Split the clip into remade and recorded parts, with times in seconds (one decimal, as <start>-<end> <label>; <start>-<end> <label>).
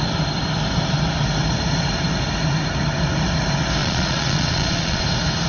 0.0-3.8 recorded; 3.8-5.0 remade; 5.0-5.5 recorded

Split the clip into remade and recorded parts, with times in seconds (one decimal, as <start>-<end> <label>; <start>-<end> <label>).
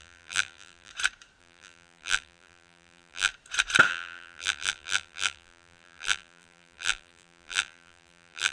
0.0-0.9 remade; 0.9-1.4 recorded; 1.4-3.3 remade; 3.3-3.9 recorded; 3.9-8.5 remade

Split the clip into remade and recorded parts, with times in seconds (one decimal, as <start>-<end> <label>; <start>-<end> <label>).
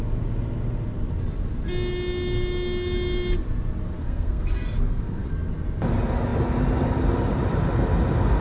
0.0-4.0 recorded; 4.0-5.3 remade; 5.3-8.4 recorded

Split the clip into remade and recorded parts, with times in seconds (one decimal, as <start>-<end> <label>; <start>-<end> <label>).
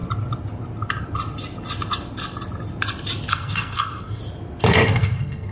0.0-3.3 recorded; 3.3-4.2 remade; 4.2-4.7 recorded; 4.7-5.5 remade